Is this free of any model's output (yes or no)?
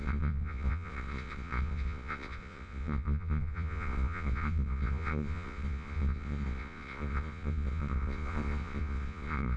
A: no